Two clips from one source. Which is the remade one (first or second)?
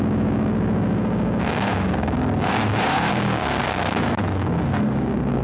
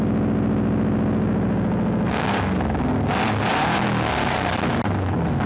first